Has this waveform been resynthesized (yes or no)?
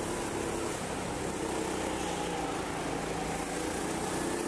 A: no